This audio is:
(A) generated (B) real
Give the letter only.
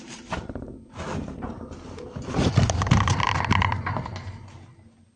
B